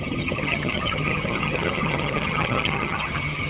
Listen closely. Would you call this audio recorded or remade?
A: remade